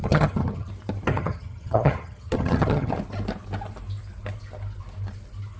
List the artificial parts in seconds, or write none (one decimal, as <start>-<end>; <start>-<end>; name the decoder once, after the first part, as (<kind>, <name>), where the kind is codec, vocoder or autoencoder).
0.0-0.7 (vocoder, HiFi-GAN); 1.1-2.9